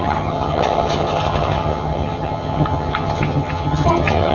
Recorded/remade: remade